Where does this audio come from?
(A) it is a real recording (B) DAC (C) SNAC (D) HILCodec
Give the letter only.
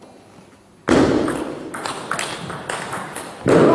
A